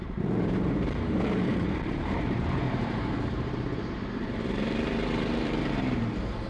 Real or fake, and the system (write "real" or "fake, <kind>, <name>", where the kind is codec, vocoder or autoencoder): fake, vocoder, BigVGAN v2